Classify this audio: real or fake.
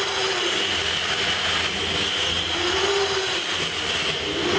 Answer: real